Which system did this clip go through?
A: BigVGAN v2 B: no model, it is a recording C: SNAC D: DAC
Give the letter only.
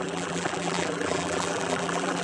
A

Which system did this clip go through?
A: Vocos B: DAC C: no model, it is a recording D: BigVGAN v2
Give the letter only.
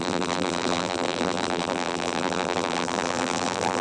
D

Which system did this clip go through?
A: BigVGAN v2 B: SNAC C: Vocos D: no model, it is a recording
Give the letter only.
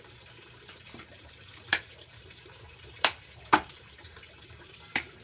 A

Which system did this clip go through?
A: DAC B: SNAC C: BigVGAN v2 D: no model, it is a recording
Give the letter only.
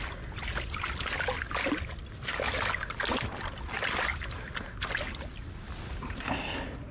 D